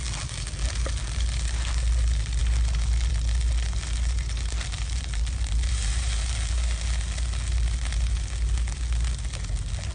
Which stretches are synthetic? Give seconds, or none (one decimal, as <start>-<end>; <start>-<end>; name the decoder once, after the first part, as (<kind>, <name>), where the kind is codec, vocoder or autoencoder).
none